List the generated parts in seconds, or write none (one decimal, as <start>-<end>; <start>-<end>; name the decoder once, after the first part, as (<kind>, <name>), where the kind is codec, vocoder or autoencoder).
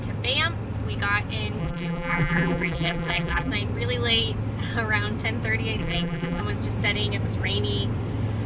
1.6-3.5 (vocoder, BigVGAN v2); 5.8-6.4